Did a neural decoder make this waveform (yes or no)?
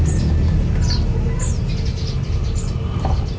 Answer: no